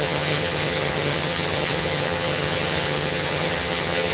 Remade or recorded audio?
remade